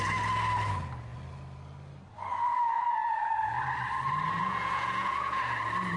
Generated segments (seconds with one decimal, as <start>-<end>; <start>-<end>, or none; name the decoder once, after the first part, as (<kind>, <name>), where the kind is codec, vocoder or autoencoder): 4.4-5.4 (vocoder, Vocos)